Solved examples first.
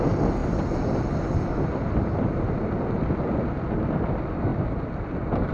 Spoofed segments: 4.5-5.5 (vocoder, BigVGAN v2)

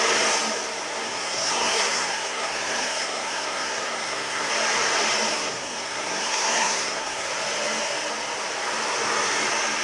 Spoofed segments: 1.0-4.5 (codec, SNAC); 5.3-7.3

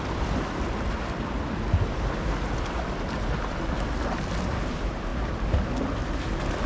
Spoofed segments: none

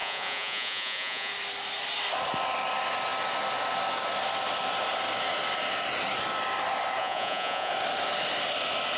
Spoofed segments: 0.0-1.3 (vocoder, Vocos); 7.0-7.7

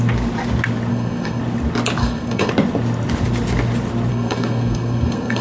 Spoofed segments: 0.9-1.4 (codec, SNAC); 2.0-2.5; 4.1-5.4

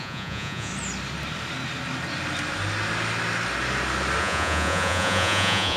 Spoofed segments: 0.0-0.7 (vocoder, Vocos); 4.2-5.8

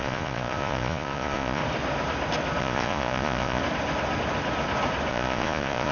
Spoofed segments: 0.0-1.6 (vocoder, Vocos); 2.6-3.6; 5.1-5.9